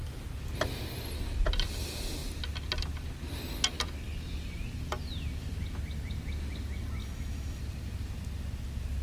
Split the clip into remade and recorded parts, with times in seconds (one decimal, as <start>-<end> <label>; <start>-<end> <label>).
0.0-7.0 recorded; 7.0-7.6 remade; 7.6-9.0 recorded